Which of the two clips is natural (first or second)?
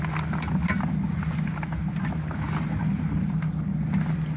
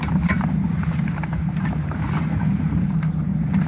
first